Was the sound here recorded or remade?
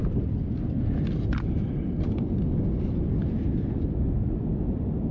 recorded